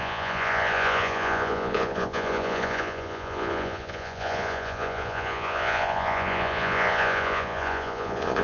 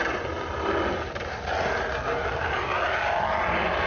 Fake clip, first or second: first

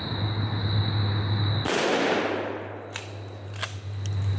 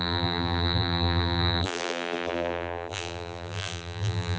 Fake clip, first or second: second